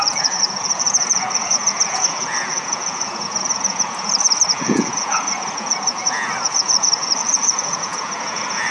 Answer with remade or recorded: remade